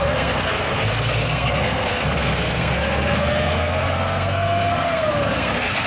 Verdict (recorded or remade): remade